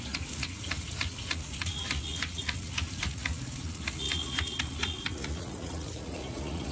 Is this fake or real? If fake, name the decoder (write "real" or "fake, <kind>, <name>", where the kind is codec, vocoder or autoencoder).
fake, vocoder, Vocos